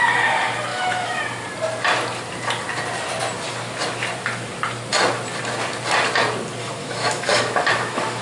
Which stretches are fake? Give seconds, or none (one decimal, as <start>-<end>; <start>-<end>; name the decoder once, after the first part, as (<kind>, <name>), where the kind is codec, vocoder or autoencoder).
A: 0.7-1.2 (autoencoder, DAC-VAE); 6.8-8.2